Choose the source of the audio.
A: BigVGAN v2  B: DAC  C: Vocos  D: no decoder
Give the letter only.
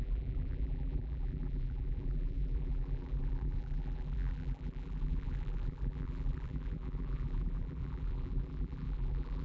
A